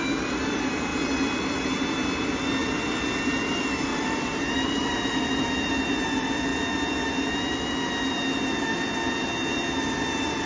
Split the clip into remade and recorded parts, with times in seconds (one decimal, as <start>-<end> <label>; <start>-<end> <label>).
0.0-3.9 recorded; 3.9-5.7 remade; 5.7-10.5 recorded